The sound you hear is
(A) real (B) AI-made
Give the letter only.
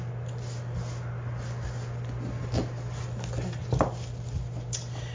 A